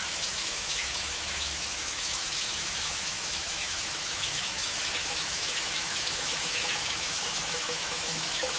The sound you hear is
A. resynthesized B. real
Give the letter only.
A